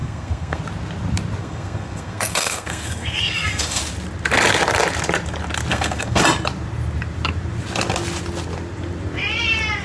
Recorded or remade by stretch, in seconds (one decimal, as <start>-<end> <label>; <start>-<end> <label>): 0.0-0.6 remade; 0.6-1.4 recorded; 1.4-3.8 remade; 3.8-5.7 recorded; 5.7-6.2 remade; 6.2-9.8 recorded